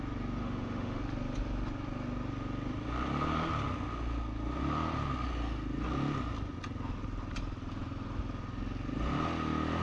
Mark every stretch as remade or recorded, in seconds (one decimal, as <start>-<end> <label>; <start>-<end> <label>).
0.0-0.4 recorded; 0.4-1.0 remade; 1.0-9.8 recorded